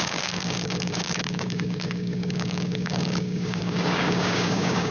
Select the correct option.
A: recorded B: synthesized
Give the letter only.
B